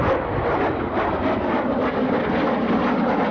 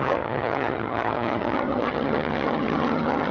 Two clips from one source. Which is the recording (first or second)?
first